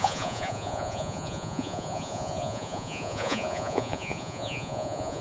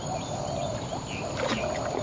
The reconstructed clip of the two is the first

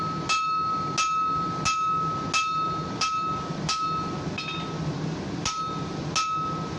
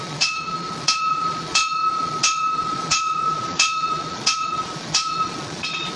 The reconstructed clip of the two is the second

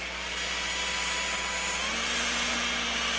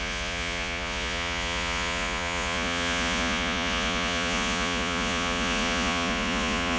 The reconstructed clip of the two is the second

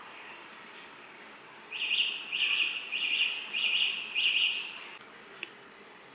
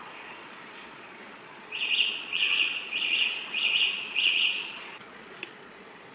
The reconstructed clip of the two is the second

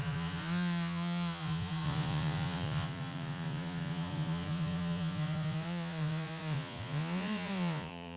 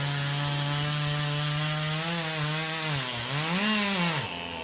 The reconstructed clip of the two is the first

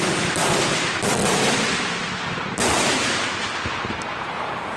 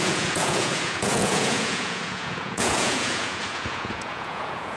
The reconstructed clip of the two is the second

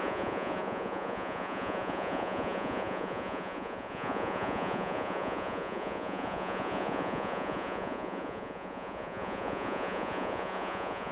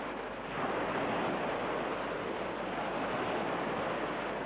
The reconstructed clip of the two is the first